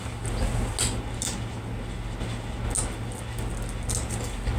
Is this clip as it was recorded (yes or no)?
yes